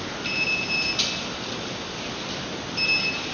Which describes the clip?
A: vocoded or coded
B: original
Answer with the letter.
B